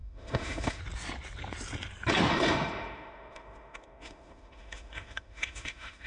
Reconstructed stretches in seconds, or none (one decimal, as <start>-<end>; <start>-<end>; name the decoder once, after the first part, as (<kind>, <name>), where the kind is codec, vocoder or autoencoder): 0.0-0.8 (autoencoder, DAC-VAE); 2.3-6.1